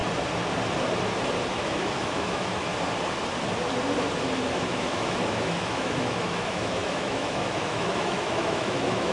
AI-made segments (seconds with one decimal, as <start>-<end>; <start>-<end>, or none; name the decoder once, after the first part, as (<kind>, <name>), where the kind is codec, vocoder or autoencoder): 1.5-2.7 (autoencoder, DAC-VAE); 4.5-9.1